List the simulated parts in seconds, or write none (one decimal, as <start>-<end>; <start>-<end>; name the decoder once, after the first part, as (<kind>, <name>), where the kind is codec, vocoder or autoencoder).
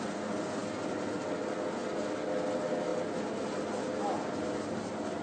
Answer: none